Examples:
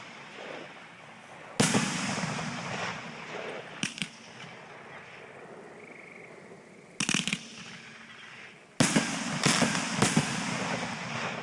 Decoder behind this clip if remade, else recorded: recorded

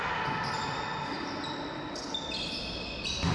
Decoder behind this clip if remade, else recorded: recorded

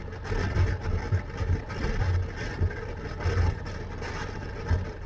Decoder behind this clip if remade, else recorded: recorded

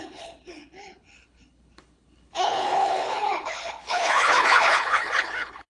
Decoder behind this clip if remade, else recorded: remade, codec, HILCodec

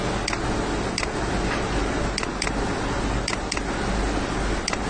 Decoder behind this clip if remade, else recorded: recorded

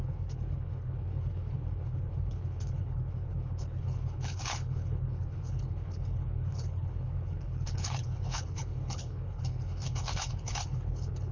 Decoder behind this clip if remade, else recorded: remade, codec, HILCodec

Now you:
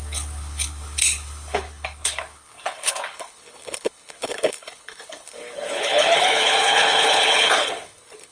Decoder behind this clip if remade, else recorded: remade, codec, HILCodec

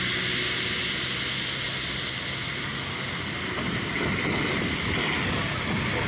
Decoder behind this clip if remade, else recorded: recorded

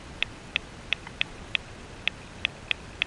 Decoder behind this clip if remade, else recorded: recorded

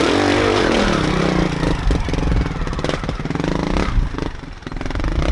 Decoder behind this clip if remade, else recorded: recorded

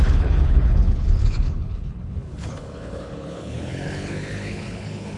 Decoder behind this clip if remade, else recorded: remade, codec, HILCodec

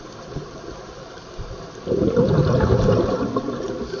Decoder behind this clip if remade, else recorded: recorded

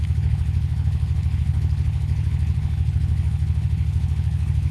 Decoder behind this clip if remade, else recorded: remade, codec, HILCodec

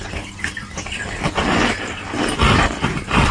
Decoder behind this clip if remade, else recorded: recorded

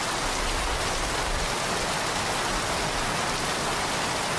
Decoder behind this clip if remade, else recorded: recorded